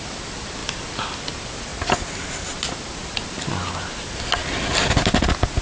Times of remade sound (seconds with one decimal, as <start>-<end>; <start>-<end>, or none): none